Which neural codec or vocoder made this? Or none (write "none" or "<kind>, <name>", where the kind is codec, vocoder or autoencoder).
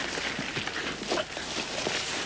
none